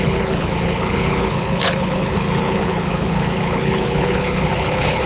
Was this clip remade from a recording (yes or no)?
yes